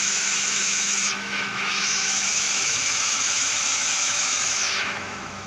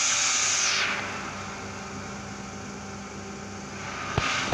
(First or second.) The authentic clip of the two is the second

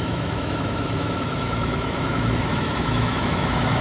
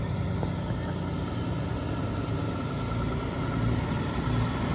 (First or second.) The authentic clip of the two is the second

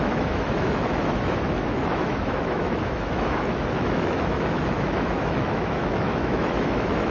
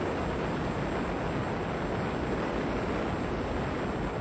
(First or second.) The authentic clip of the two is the second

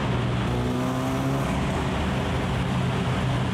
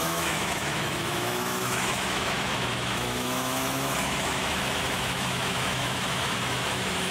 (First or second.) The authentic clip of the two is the first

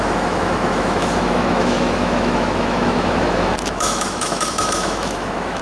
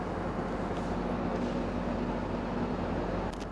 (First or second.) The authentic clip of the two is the second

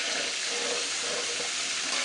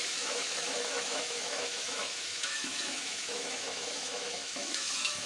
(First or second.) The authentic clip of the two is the first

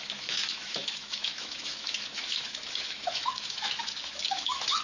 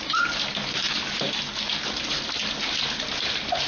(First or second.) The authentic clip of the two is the second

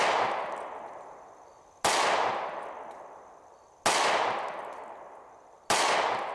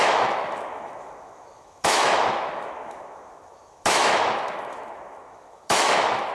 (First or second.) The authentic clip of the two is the first